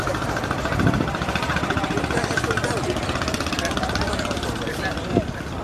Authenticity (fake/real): real